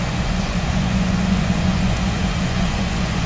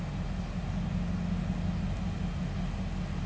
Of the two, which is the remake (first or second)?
first